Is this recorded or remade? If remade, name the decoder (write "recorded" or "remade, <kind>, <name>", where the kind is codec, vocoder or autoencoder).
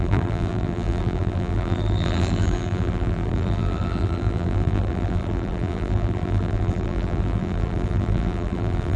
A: remade, vocoder, BigVGAN v2